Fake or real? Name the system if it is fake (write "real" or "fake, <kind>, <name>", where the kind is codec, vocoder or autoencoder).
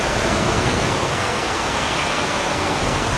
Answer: fake, codec, SNAC